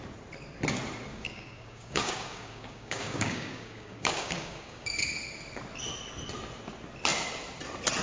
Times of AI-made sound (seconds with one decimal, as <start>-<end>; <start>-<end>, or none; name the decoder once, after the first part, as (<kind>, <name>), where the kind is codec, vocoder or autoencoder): 1.1-4.9 (codec, DAC)